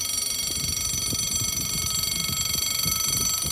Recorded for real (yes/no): no